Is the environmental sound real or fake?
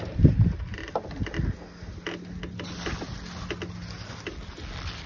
real